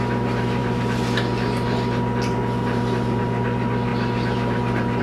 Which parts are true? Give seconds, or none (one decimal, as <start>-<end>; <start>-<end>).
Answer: 0.0-5.0